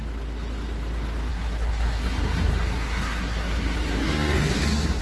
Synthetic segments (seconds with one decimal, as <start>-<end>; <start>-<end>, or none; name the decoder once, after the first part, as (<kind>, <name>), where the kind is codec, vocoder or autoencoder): 1.3-5.0 (codec, SNAC)